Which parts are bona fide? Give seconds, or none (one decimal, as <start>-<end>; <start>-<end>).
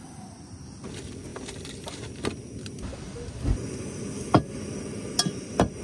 0.0-5.8